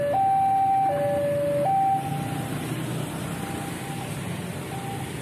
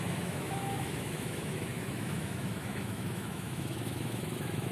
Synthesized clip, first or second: second